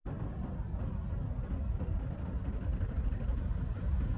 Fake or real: real